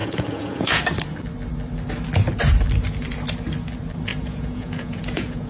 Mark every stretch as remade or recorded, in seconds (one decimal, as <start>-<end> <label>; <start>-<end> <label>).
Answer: 0.0-0.8 remade; 0.8-4.1 recorded; 4.1-5.5 remade